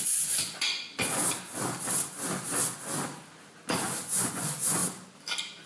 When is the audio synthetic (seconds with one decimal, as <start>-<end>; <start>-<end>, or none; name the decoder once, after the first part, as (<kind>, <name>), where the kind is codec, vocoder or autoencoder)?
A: 0.0-1.2 (vocoder, Vocos); 3.8-4.8